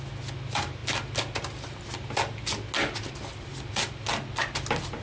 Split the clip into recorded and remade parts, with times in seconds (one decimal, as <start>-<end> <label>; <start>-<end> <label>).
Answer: 0.0-5.0 recorded